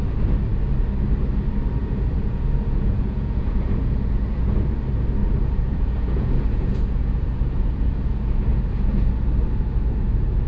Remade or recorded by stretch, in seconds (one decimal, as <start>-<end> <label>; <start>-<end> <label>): 0.0-1.8 recorded; 1.8-4.6 remade; 4.6-5.2 recorded; 5.2-9.1 remade; 9.1-10.5 recorded